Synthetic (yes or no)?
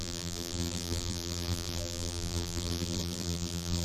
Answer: yes